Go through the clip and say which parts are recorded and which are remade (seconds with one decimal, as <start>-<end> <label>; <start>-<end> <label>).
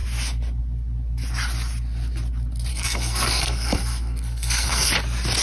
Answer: 0.0-2.7 recorded; 2.7-4.9 remade; 4.9-5.4 recorded